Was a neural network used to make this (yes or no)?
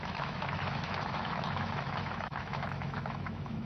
yes